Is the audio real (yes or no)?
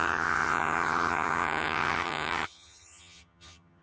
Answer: no